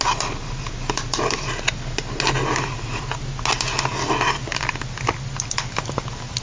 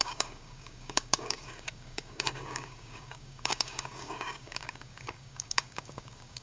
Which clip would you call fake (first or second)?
second